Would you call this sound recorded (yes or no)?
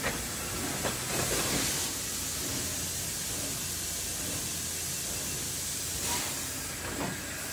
yes